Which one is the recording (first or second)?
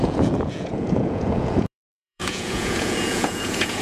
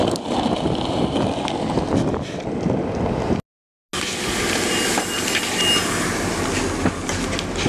second